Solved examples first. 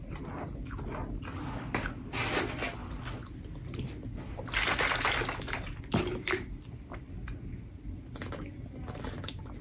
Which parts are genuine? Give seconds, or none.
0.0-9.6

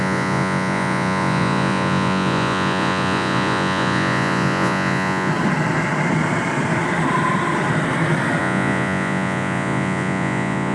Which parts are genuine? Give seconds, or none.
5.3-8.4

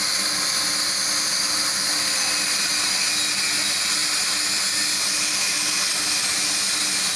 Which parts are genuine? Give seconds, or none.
0.0-7.2

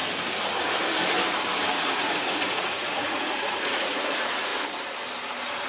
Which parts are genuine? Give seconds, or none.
0.0-1.8; 4.5-5.7

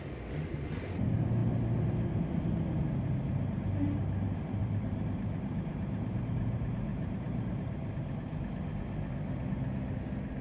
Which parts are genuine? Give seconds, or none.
0.0-4.6; 6.2-6.9; 7.6-10.4

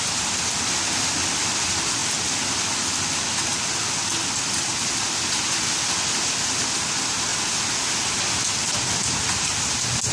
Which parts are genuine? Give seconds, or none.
0.0-10.1